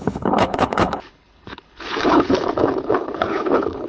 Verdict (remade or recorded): remade